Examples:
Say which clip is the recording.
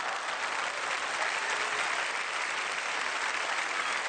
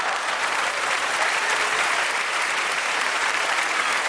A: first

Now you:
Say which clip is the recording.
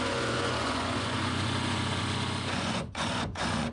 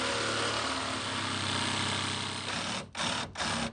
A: second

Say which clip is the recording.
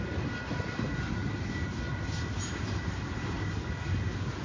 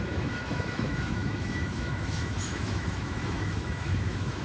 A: first